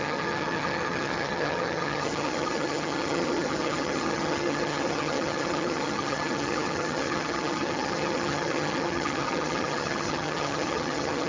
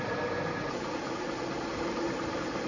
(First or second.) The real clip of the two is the second